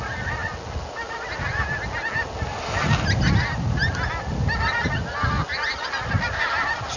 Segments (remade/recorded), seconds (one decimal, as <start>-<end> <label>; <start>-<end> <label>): 0.0-7.0 recorded